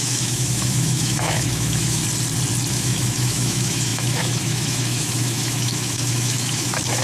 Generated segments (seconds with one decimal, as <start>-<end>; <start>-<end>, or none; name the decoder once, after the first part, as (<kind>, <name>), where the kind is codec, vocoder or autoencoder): 0.0-2.0 (autoencoder, DAC-VAE); 2.7-7.0